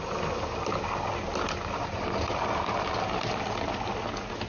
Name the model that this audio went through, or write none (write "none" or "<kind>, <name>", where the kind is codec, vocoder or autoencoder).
none